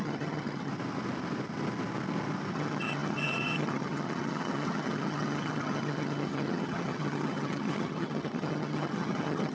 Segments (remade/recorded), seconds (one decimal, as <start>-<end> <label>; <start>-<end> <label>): 0.0-0.7 remade; 0.7-2.5 recorded; 2.5-9.5 remade